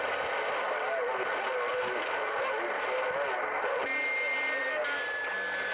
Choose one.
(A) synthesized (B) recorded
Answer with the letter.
B